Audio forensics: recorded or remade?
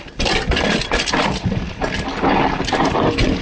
recorded